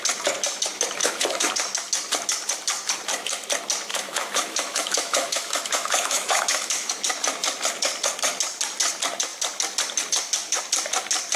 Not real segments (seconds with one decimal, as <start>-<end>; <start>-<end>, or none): 1.0-1.5; 3.9-6.9